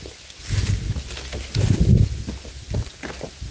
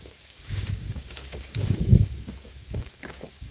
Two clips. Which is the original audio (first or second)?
first